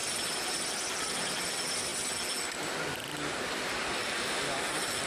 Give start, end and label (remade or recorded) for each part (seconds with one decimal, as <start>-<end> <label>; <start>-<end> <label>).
0.0-5.1 recorded